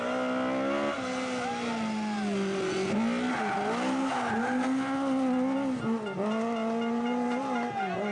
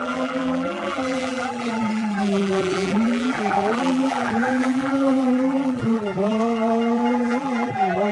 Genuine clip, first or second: first